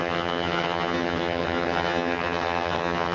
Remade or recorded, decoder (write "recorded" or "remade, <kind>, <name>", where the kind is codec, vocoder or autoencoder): remade, vocoder, HiFi-GAN